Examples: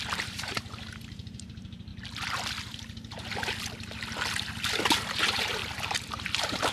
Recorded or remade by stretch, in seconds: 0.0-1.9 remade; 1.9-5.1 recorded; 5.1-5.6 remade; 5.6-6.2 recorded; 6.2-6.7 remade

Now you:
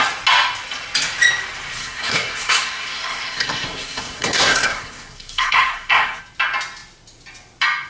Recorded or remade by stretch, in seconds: 0.0-1.8 recorded; 1.8-6.2 remade; 6.2-7.9 recorded

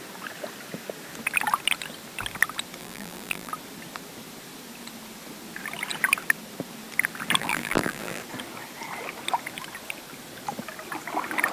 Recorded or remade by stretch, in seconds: 0.0-2.8 recorded; 2.8-3.5 remade; 3.5-7.4 recorded; 7.4-8.2 remade; 8.2-11.5 recorded

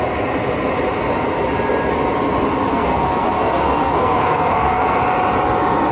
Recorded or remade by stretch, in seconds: 0.0-2.7 recorded; 2.7-5.0 remade; 5.0-5.9 recorded

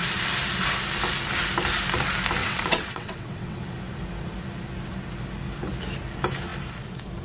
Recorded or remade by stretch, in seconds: 0.0-2.4 recorded; 2.4-3.6 remade; 3.6-7.2 recorded

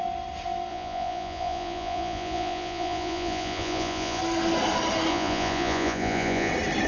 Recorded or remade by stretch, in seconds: 0.0-0.7 recorded; 0.7-4.2 remade; 4.2-5.1 recorded; 5.1-6.5 remade; 6.5-6.9 recorded

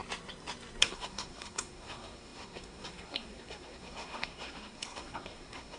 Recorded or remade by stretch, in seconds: 0.0-0.8 recorded; 0.8-5.8 remade

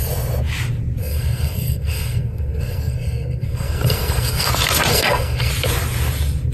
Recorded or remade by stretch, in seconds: 0.0-1.0 recorded; 1.0-4.5 remade; 4.5-4.9 recorded; 4.9-5.5 remade; 5.5-6.5 recorded